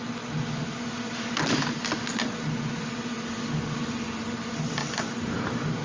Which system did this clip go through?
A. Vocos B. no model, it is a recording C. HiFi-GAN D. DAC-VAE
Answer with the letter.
B